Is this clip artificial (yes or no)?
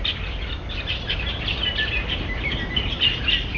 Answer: no